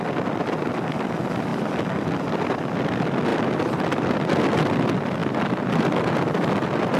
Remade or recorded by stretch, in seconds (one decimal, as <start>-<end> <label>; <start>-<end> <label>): 0.0-7.0 recorded